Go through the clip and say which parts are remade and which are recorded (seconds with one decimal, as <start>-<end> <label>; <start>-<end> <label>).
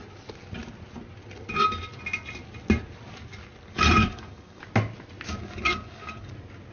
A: 0.0-4.0 recorded; 4.0-4.6 remade; 4.6-5.4 recorded; 5.4-6.3 remade; 6.3-6.7 recorded